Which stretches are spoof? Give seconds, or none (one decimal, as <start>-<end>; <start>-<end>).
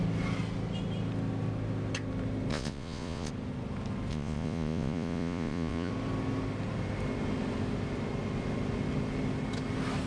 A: 2.5-3.3; 4.1-5.9